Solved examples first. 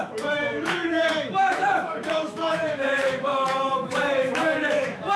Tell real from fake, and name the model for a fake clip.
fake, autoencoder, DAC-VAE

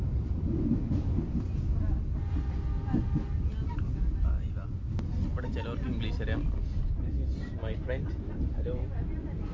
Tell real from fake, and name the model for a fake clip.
real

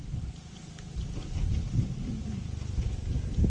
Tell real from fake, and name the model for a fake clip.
real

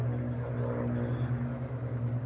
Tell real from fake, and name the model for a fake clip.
real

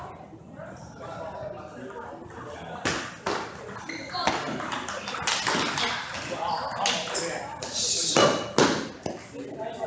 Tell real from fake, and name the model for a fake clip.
real